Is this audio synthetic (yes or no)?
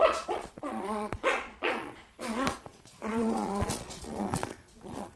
yes